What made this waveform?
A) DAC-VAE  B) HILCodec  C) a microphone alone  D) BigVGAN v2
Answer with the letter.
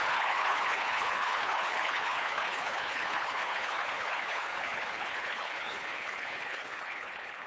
B